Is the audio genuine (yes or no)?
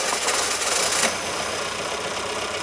yes